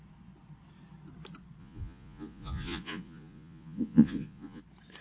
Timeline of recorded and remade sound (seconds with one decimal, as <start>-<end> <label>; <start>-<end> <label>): 0.0-1.6 recorded; 1.6-4.6 remade; 4.6-5.0 recorded